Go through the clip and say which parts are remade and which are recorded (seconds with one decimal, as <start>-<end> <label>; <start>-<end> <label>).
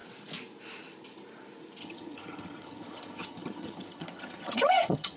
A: 0.0-1.8 recorded; 1.8-5.2 remade